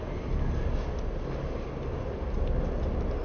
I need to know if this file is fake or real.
real